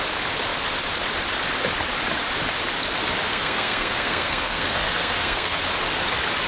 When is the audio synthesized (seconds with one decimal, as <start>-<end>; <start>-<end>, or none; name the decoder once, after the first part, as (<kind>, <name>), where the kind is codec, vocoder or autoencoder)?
3.3-5.6 (codec, SNAC)